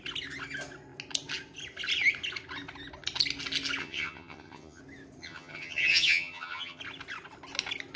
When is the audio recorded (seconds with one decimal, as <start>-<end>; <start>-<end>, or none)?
0.0-3.8; 4.8-5.2; 6.8-8.0